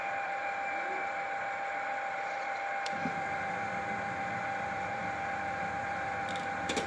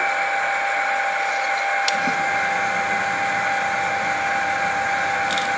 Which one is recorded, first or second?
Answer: second